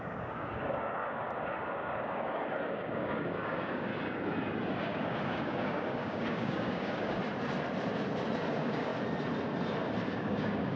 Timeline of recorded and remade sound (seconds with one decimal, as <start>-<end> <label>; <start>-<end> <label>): 0.0-3.9 remade; 3.9-4.8 recorded; 4.8-7.2 remade; 7.2-8.5 recorded; 8.5-8.9 remade; 8.9-10.1 recorded; 10.1-10.8 remade